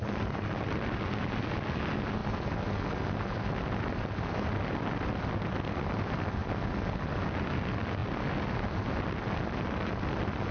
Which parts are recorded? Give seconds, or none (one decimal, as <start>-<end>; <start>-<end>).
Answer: 0.0-10.5